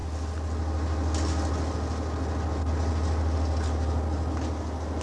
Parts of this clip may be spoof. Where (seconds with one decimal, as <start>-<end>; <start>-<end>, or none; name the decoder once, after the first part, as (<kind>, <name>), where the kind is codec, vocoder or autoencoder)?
none